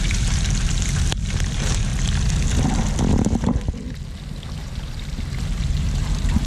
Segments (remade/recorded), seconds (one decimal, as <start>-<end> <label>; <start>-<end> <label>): 0.0-1.9 remade; 1.9-4.0 recorded; 4.0-6.5 remade